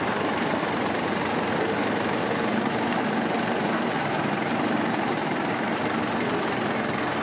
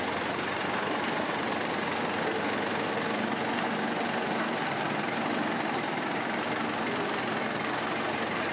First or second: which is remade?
first